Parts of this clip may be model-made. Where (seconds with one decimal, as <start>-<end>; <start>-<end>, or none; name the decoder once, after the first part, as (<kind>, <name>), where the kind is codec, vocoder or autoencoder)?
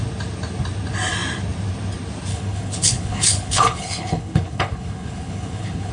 2.3-5.9 (codec, HILCodec)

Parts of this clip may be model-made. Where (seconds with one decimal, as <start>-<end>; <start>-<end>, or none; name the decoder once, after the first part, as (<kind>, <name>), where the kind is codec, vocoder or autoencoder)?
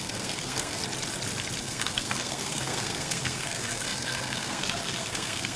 0.0-0.8 (codec, SNAC); 1.6-5.6